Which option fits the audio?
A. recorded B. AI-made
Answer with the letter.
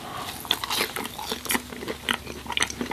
A